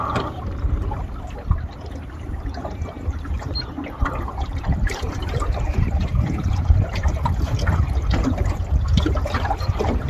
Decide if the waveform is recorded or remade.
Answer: remade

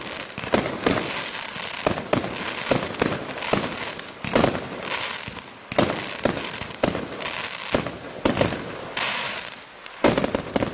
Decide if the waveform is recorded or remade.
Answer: recorded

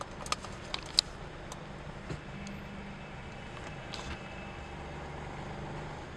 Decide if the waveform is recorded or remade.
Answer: recorded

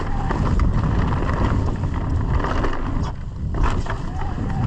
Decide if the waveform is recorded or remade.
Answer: recorded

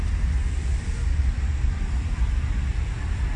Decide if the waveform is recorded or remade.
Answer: recorded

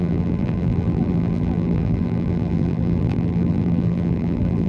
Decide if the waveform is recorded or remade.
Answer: remade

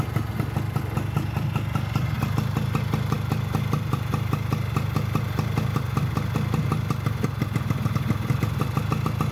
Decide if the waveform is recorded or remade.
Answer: recorded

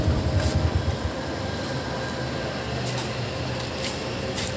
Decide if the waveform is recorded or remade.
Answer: remade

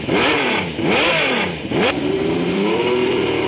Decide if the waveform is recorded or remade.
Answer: remade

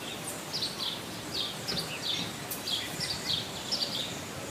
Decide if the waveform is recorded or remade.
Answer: recorded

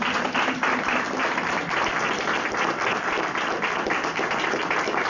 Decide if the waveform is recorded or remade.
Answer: recorded